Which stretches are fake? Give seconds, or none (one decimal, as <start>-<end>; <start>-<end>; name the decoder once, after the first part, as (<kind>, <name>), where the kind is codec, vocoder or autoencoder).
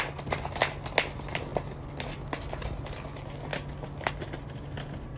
none